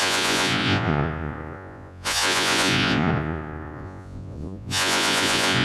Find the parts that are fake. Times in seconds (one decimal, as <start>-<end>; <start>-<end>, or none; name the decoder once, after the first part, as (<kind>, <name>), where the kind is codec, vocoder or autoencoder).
0.0-5.6 (vocoder, Vocos)

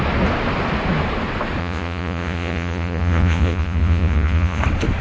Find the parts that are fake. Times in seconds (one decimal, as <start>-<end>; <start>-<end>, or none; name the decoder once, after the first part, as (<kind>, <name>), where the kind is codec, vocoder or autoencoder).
1.6-4.6 (vocoder, Vocos)

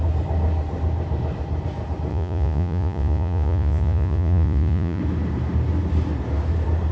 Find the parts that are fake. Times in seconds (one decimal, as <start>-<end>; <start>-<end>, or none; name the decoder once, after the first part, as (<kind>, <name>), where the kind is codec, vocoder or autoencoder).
2.1-5.0 (vocoder, Vocos)

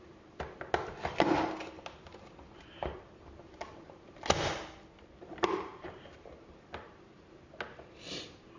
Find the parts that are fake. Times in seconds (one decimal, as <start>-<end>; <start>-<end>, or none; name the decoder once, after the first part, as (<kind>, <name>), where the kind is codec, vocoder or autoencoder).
none

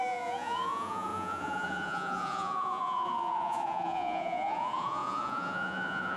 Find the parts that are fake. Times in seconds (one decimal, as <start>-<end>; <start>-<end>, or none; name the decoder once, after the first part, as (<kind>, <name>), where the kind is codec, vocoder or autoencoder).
0.0-6.2 (vocoder, Vocos)